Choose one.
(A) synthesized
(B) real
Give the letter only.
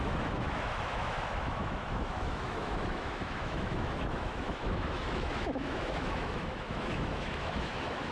A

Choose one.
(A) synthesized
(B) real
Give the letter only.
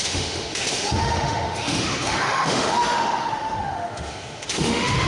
A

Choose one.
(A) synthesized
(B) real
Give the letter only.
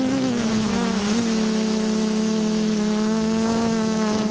A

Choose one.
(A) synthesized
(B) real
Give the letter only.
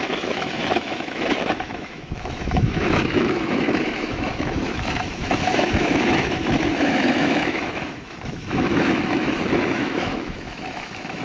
A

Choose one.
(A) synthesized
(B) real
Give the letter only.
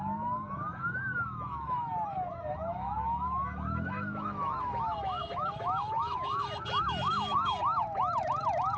A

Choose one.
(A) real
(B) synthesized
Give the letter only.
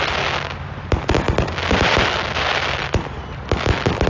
A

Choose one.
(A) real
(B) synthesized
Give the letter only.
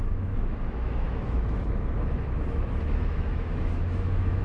B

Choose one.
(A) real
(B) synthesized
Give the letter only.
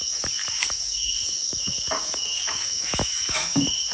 B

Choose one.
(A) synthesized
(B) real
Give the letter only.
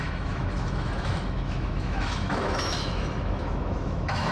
A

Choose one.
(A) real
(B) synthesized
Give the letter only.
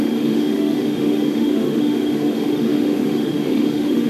B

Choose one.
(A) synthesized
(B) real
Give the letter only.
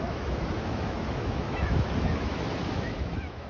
A